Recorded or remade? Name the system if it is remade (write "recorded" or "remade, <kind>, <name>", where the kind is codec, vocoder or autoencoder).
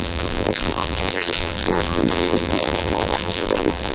remade, vocoder, BigVGAN v2